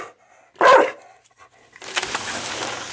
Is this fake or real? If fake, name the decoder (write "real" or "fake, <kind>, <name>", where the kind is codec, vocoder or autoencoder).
real